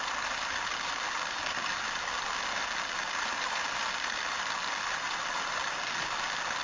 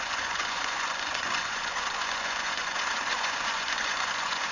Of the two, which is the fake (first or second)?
second